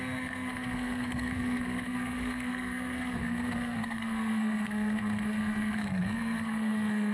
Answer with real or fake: fake